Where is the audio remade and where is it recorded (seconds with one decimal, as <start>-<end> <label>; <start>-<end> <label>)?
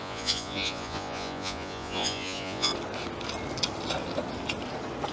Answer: 0.0-2.7 remade; 2.7-5.1 recorded